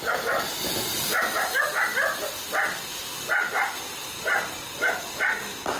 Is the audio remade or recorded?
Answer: recorded